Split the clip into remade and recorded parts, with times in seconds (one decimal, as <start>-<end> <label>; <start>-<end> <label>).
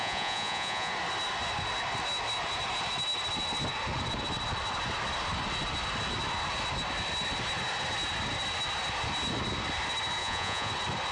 0.0-0.9 remade; 0.9-10.2 recorded; 10.2-10.7 remade; 10.7-11.1 recorded